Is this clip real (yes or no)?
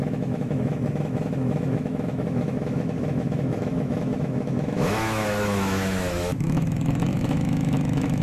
no